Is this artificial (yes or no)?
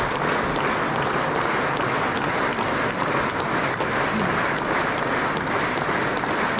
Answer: no